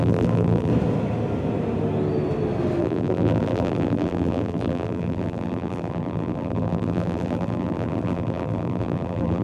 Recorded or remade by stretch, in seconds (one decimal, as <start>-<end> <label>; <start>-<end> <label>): 0.0-0.7 remade; 0.7-2.8 recorded; 2.8-9.4 remade